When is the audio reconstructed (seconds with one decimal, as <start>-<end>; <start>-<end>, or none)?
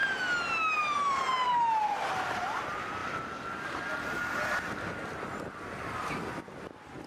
none